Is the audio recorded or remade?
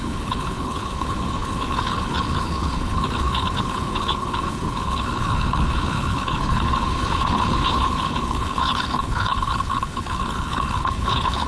remade